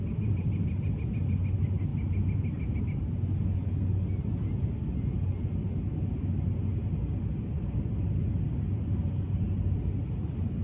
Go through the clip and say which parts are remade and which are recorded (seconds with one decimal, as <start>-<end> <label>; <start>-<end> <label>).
0.0-10.6 recorded